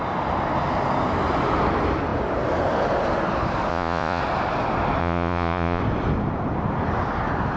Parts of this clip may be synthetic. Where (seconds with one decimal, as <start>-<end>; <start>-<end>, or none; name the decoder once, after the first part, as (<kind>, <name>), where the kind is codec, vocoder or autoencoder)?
3.7-4.2 (vocoder, Vocos); 5.0-5.8